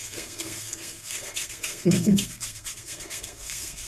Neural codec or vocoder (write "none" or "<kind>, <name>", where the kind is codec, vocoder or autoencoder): codec, SNAC